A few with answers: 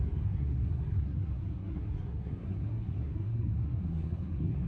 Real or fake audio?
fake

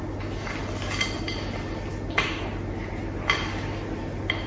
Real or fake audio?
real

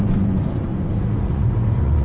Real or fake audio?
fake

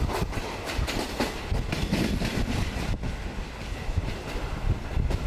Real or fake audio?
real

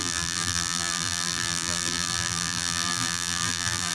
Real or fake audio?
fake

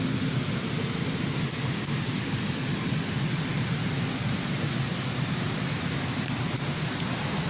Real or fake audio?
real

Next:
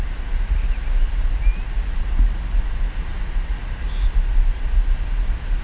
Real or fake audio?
real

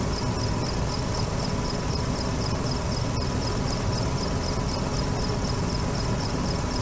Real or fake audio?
real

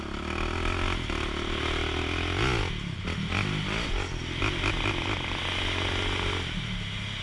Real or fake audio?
real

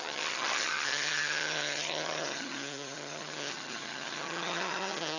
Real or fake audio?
fake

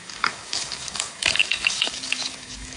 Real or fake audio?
fake